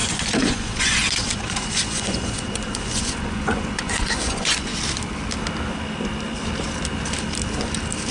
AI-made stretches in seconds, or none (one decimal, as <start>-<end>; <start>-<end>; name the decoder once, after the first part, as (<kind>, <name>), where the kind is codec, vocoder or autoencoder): 0.0-4.7 (vocoder, Vocos)

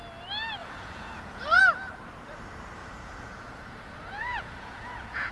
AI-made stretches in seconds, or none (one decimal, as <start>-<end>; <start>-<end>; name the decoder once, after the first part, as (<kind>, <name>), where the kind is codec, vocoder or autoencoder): 0.6-1.6 (vocoder, Vocos); 2.8-5.3